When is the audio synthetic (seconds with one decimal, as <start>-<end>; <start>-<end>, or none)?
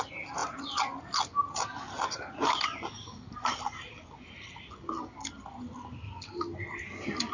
none